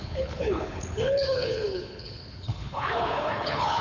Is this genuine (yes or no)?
no